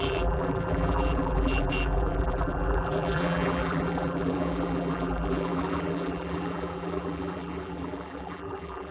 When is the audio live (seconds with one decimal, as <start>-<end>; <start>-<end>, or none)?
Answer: none